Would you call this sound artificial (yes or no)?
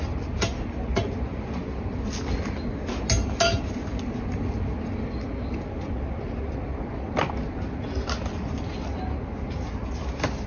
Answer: no